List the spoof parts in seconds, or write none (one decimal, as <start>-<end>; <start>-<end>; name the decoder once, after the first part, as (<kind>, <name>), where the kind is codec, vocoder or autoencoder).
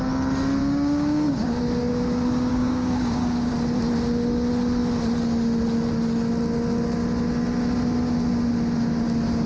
0.6-1.6 (codec, DAC); 2.5-3.5